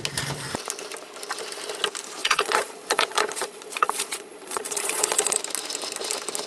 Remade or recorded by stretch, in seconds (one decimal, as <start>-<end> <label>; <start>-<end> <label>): 0.0-2.2 recorded; 2.2-5.4 remade; 5.4-6.5 recorded